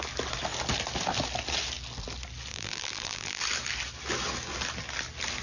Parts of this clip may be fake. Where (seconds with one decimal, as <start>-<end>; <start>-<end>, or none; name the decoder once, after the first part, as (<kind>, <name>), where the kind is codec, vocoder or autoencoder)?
2.5-3.4 (vocoder, BigVGAN v2)